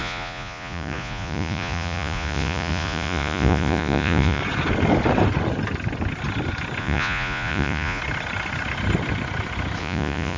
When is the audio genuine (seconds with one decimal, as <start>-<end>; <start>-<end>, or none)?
4.4-6.8; 8.0-9.8